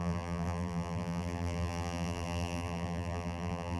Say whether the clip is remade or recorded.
remade